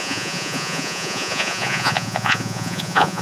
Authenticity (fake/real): fake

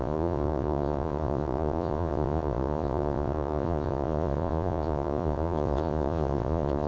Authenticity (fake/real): fake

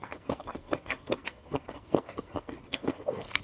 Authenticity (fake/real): fake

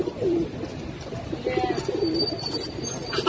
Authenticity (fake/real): real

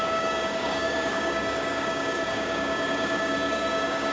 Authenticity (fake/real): fake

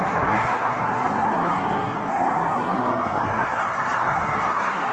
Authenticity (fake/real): fake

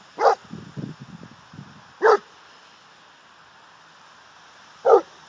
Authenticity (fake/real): real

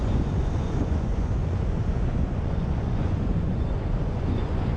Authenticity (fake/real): fake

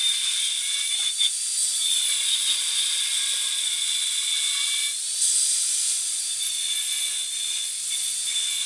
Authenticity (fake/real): real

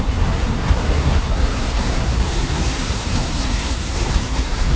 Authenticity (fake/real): fake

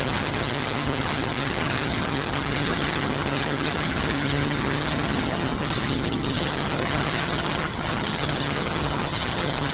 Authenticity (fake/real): fake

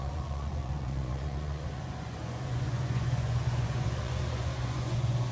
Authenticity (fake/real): fake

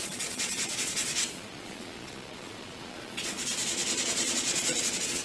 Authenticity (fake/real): fake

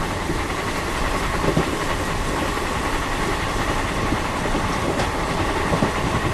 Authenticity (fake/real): fake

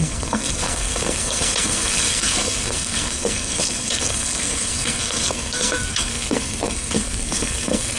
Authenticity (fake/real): fake